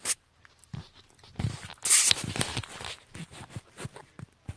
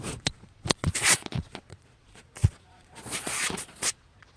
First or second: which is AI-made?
second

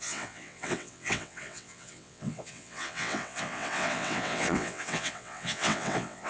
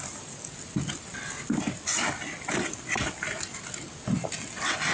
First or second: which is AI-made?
first